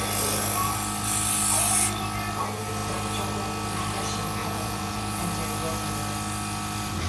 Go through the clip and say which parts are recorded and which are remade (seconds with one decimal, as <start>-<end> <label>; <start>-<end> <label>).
0.0-4.4 recorded; 4.4-5.2 remade; 5.2-7.1 recorded